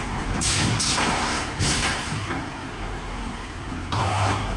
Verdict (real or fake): fake